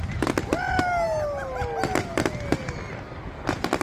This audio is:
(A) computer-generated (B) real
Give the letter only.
B